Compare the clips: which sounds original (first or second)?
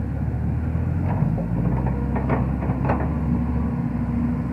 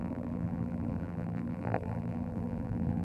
first